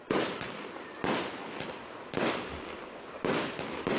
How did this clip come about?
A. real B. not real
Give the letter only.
A